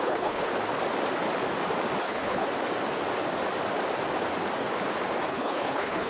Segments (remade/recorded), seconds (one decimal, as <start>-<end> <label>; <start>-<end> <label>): 0.0-0.5 remade; 0.5-2.0 recorded; 2.0-2.5 remade; 2.5-5.3 recorded; 5.3-6.1 remade